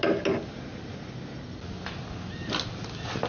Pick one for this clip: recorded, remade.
recorded